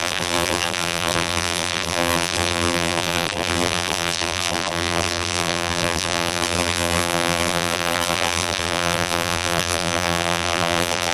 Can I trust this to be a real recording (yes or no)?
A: no